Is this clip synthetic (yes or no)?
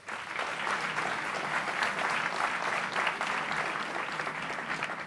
no